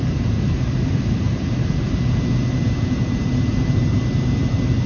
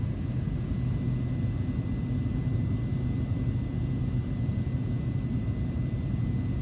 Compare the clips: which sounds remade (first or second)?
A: first